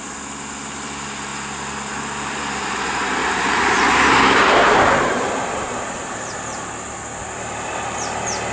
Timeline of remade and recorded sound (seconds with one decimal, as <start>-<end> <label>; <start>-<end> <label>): 0.0-3.2 recorded; 3.2-6.7 remade; 6.7-8.5 recorded